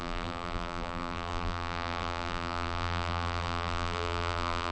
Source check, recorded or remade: remade